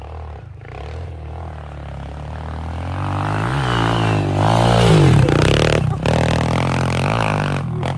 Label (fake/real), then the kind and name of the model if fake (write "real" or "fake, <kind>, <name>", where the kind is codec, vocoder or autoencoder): real